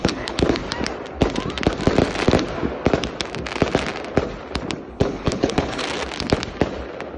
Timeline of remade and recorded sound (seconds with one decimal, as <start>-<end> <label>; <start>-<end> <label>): 0.0-0.6 remade; 0.6-4.9 recorded; 4.9-5.8 remade; 5.8-7.2 recorded